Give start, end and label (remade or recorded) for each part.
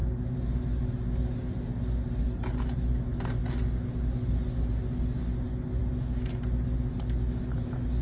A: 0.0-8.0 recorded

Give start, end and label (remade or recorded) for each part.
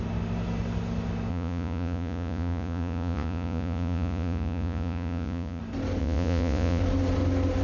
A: 0.0-1.3 recorded; 1.3-5.6 remade; 5.6-6.0 recorded; 6.0-6.8 remade; 6.8-7.6 recorded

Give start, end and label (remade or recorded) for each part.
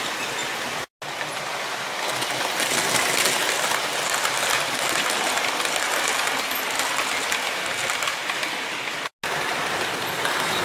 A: 0.0-10.6 recorded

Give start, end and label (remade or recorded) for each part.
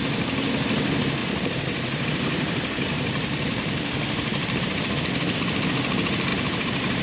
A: 0.0-1.2 recorded; 1.2-5.1 remade; 5.1-6.3 recorded; 6.3-7.0 remade